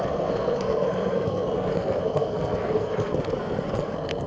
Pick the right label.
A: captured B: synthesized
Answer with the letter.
B